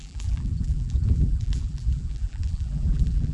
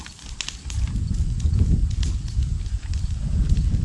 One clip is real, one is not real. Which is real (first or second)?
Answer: second